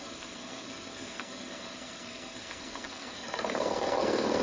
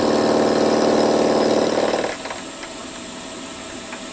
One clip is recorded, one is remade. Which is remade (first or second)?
first